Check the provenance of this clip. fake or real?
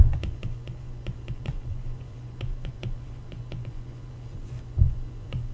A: fake